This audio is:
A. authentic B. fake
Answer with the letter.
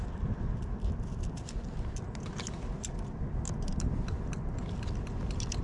A